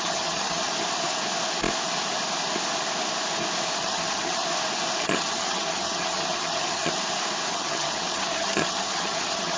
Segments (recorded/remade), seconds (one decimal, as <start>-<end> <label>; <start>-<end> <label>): 0.0-0.7 remade; 0.7-3.8 recorded; 3.8-4.4 remade; 4.4-5.0 recorded; 5.0-6.9 remade; 6.9-7.5 recorded; 7.5-9.6 remade